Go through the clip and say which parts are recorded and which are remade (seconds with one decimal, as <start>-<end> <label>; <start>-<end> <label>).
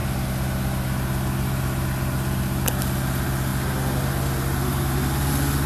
0.0-3.5 recorded; 3.5-5.3 remade; 5.3-5.7 recorded